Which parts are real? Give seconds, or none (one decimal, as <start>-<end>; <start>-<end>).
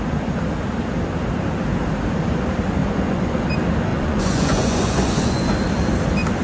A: 0.0-2.8; 3.4-3.9; 5.5-6.4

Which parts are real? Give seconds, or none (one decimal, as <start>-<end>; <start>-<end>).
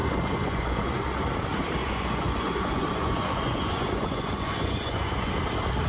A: 0.9-1.8; 5.3-5.9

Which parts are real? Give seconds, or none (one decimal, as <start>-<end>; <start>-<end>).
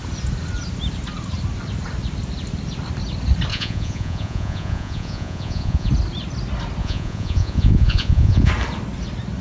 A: 0.0-3.5; 5.9-6.8; 8.5-9.4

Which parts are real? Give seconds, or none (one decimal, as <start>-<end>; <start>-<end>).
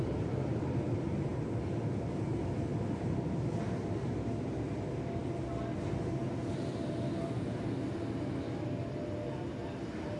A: 0.0-10.2